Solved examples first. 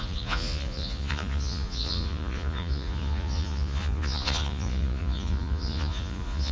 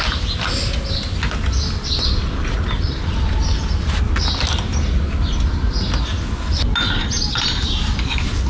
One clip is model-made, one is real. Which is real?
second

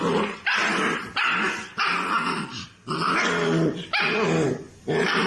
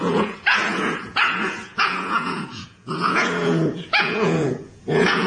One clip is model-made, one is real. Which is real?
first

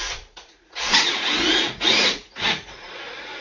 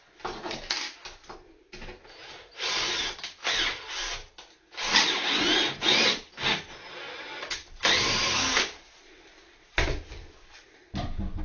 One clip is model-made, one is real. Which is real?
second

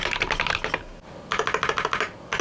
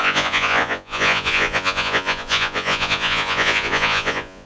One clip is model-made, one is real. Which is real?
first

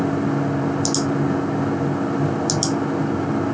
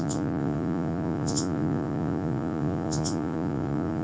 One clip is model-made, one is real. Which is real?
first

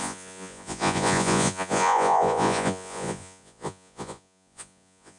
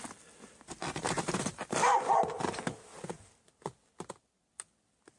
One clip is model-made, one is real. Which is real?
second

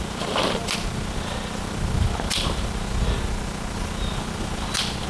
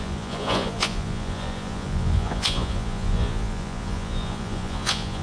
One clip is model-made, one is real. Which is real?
first